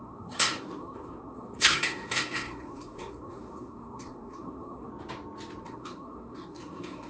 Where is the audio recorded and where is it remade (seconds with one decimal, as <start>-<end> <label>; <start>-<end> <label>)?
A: 0.0-4.9 remade; 4.9-5.6 recorded; 5.6-7.1 remade